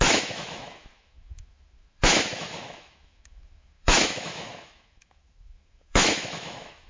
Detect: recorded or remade remade